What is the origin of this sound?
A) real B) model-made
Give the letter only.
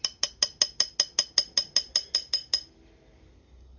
A